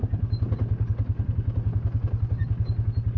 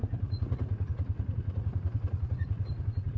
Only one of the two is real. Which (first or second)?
first